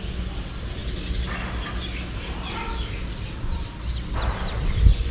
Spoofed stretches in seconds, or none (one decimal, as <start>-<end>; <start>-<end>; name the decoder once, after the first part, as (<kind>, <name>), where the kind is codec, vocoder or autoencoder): none